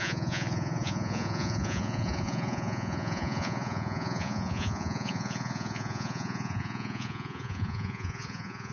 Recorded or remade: remade